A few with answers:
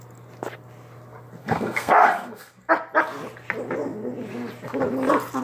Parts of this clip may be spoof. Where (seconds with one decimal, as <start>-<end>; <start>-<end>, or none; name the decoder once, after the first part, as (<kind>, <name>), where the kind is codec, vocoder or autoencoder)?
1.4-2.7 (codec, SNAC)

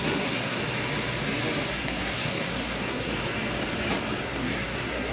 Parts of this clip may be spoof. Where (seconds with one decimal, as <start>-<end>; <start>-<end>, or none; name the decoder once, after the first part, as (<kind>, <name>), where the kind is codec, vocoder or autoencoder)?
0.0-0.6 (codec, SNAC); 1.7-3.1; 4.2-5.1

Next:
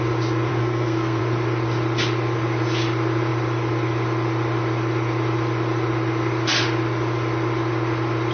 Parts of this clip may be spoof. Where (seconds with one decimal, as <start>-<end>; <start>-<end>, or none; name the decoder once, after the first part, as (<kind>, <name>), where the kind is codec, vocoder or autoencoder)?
0.5-1.2 (codec, SNAC)

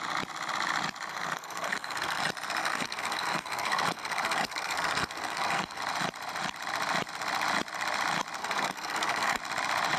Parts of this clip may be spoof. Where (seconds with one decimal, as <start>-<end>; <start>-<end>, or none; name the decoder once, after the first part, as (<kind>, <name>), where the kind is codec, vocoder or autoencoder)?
1.1-2.2 (codec, SNAC); 2.6-5.8; 8.4-9.4

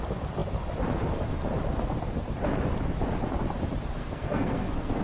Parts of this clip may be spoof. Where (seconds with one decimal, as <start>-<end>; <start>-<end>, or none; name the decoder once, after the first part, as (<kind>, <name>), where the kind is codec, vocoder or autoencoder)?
4.0-5.0 (codec, SNAC)

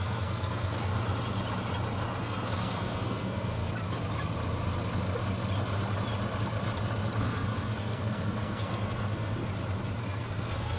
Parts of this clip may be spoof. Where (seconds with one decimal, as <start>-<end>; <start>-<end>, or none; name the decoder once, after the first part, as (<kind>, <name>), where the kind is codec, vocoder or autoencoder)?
0.0-0.9 (codec, SNAC); 2.2-3.6; 7.2-9.4; 10.0-10.8

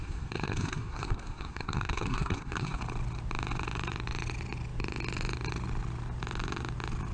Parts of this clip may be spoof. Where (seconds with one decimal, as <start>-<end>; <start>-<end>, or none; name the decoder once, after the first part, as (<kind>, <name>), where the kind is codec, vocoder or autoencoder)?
0.0-2.8 (codec, SNAC)